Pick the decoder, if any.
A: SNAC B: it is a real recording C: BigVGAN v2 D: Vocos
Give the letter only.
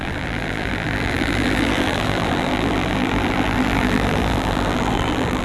C